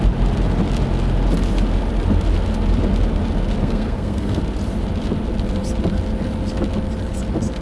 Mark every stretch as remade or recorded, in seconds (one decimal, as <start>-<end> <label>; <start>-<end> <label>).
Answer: 0.0-3.6 recorded; 3.6-4.4 remade; 4.4-7.6 recorded